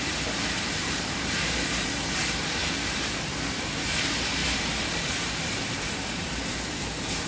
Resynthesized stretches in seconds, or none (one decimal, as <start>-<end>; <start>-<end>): 0.0-7.3

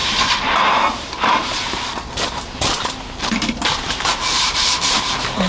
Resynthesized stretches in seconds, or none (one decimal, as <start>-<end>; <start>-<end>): 0.0-5.5

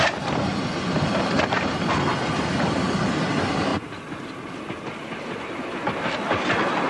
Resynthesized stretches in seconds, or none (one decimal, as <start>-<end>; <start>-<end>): none

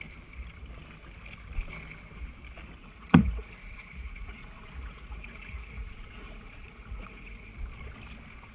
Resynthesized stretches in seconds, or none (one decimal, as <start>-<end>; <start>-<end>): 2.8-7.5

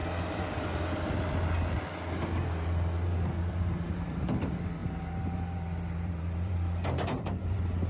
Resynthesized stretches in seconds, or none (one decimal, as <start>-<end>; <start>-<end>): 3.5-7.9

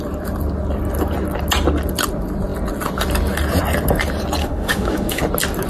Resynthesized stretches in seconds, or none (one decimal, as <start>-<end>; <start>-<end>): 4.4-5.2

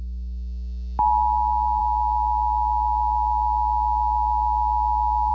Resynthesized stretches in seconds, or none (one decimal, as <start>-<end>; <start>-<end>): none

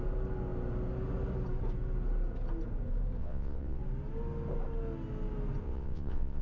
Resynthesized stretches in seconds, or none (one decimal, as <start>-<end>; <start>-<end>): 3.2-3.8; 5.6-6.4